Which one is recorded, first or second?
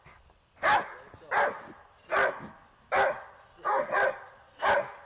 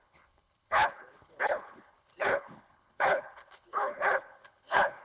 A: first